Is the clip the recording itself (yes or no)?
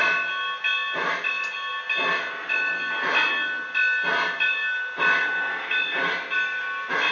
yes